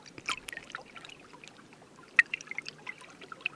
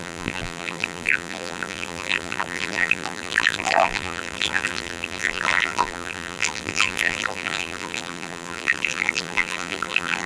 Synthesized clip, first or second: second